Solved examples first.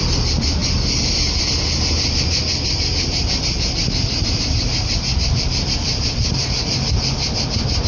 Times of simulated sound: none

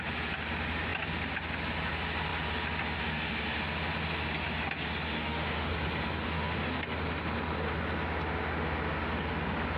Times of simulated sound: 5.2-5.7 (autoencoder, DAC-VAE); 6.2-6.8

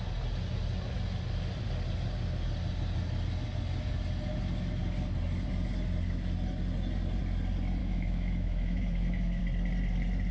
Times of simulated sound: 7.8-9.4 (autoencoder, DAC-VAE)

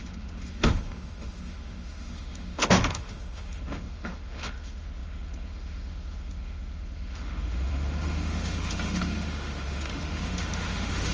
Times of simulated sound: 0.0-11.1 (autoencoder, DAC-VAE)

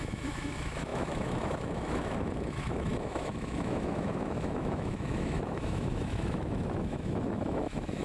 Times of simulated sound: 0.0-8.0 (autoencoder, DAC-VAE)